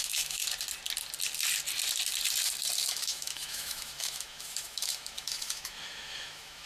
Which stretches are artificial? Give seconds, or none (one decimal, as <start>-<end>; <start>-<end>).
0.0-0.4; 2.8-6.7